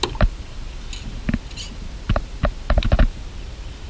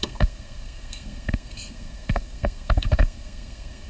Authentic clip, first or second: first